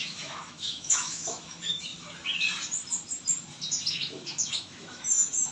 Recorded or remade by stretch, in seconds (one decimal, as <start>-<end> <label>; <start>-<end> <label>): 0.0-1.9 remade; 1.9-3.9 recorded; 3.9-5.5 remade